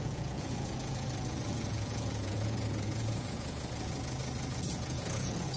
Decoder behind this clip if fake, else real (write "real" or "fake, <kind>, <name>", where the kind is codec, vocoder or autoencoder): fake, vocoder, Vocos